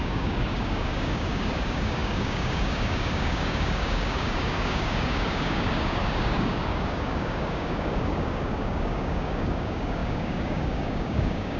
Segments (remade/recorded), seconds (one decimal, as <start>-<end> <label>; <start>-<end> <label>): 0.0-11.6 remade